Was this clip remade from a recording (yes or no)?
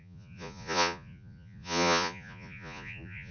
yes